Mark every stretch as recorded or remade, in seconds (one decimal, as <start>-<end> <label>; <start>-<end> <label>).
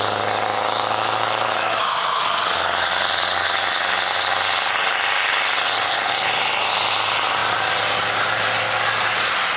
0.0-0.5 recorded; 0.5-2.2 remade; 2.2-9.6 recorded